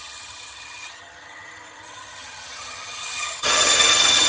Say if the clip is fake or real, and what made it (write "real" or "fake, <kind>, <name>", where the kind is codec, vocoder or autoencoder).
fake, vocoder, HiFi-GAN